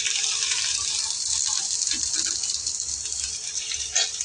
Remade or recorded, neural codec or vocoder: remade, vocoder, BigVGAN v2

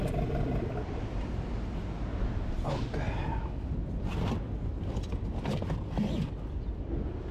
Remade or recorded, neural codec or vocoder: recorded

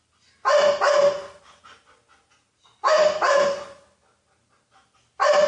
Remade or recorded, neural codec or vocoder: recorded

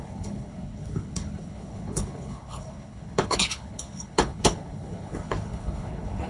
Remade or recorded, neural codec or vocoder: remade, codec, HILCodec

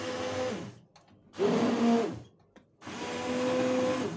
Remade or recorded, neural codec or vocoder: recorded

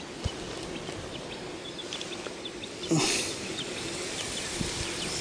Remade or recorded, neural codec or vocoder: recorded